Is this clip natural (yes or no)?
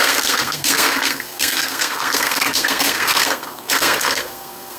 no